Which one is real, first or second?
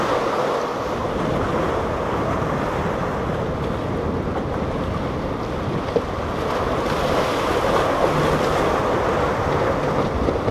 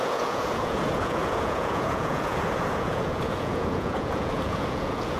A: first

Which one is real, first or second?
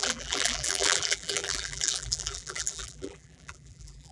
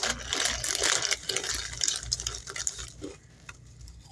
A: second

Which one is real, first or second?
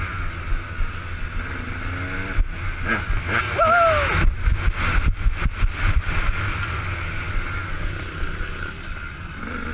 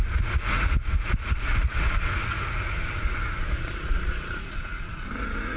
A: first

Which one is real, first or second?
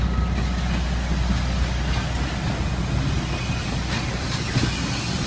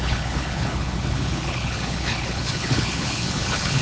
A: first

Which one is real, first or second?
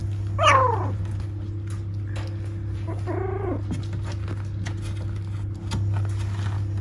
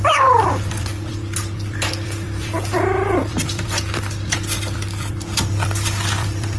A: first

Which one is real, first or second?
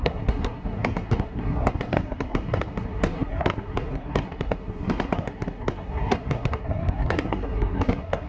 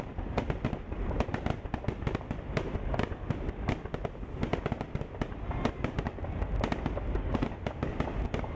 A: second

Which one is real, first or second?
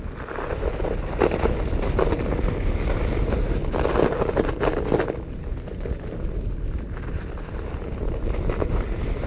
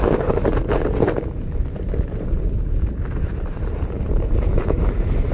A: first